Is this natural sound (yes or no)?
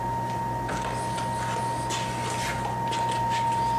yes